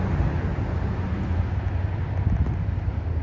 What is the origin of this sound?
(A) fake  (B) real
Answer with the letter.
B